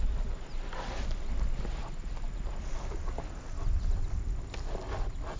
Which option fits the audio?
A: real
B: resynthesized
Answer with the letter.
A